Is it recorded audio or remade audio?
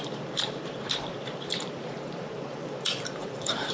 remade